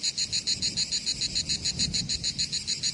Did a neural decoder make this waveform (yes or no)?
no